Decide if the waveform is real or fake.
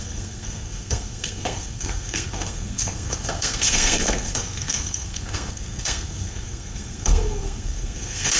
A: fake